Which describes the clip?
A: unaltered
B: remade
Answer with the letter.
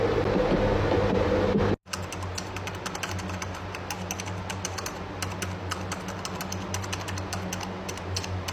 A